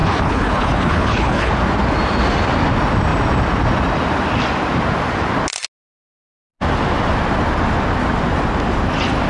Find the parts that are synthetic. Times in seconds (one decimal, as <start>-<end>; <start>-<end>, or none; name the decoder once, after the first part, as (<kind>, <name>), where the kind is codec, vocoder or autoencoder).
0.0-1.5 (codec, HILCodec)